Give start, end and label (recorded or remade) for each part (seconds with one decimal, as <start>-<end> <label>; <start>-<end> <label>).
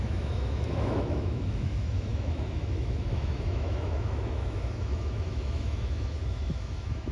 0.0-7.1 remade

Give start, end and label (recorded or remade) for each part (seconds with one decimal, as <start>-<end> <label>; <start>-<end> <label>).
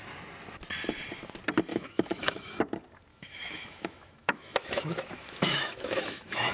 0.0-1.7 recorded; 1.7-2.6 remade; 2.6-3.1 recorded; 3.1-6.5 remade